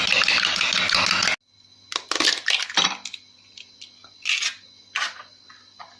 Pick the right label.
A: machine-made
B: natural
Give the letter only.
B